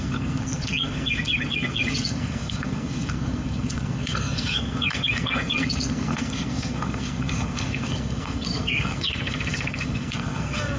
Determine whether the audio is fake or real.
fake